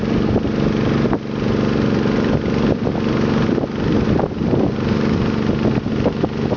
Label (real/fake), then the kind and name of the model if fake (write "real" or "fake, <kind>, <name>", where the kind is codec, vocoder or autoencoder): real